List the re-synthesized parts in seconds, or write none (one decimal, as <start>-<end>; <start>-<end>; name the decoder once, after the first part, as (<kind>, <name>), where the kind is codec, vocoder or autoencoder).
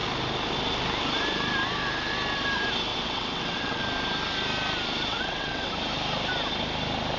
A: 2.9-3.8 (vocoder, WaveNeXt); 5.1-5.7